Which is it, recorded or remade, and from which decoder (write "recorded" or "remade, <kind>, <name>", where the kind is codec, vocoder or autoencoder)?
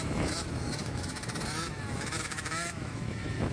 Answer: remade, autoencoder, DAC-VAE